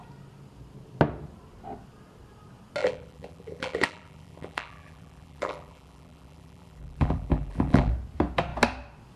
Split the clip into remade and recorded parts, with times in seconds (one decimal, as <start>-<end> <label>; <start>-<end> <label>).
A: 0.0-2.8 recorded; 2.8-7.9 remade; 7.9-9.2 recorded